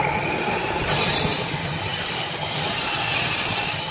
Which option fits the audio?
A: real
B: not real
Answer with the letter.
A